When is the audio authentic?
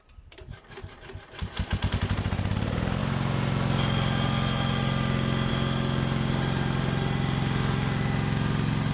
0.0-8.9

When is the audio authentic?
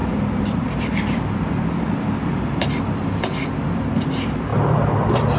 2.7-4.5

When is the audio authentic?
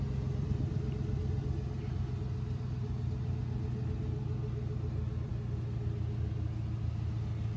0.0-7.6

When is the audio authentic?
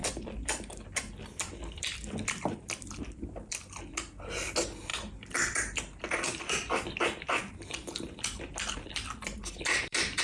2.8-4.9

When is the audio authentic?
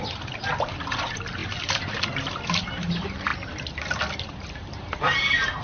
3.3-4.3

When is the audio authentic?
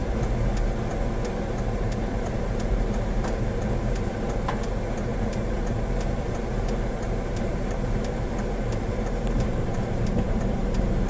0.0-1.3